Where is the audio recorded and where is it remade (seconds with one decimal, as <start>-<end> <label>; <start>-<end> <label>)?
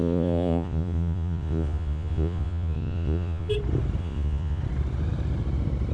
0.0-3.5 remade; 3.5-4.0 recorded; 4.0-4.6 remade; 4.6-5.9 recorded